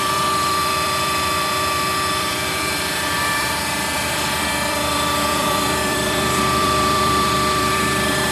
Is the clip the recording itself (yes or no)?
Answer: no